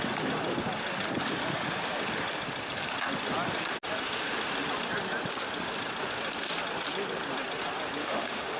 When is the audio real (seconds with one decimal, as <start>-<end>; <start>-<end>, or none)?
0.0-8.0